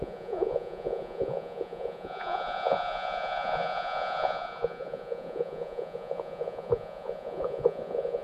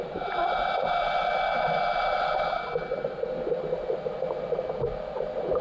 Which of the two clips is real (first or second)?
second